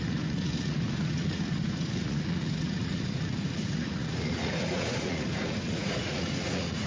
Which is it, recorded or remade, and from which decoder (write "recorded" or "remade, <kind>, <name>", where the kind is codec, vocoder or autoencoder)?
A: remade, vocoder, Vocos